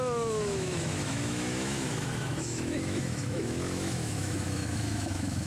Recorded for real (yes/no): no